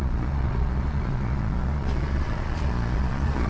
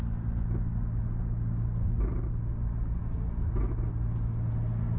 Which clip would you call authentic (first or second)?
second